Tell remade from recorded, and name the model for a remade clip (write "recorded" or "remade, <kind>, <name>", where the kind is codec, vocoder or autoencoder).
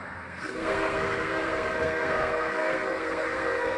remade, codec, SNAC